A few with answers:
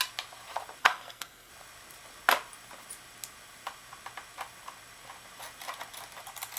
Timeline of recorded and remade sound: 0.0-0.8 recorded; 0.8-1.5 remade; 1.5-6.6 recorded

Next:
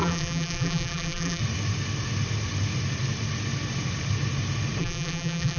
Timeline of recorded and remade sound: 0.0-1.4 remade; 1.4-4.8 recorded; 4.8-5.6 remade

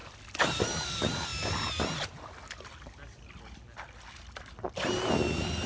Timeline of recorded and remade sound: 0.0-5.7 recorded